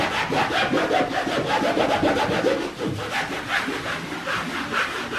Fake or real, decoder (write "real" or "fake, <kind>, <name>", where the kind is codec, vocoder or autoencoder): real